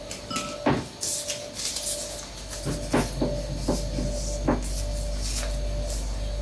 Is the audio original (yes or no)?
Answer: yes